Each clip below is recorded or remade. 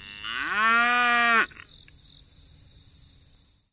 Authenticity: recorded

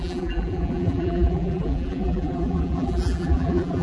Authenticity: remade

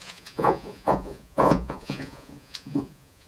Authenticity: remade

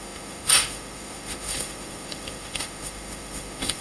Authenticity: remade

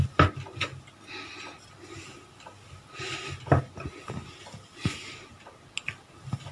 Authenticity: recorded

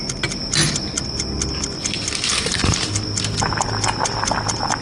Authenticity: recorded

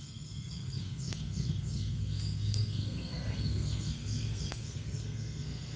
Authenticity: remade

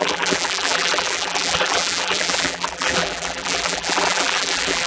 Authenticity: remade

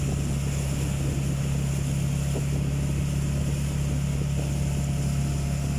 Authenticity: recorded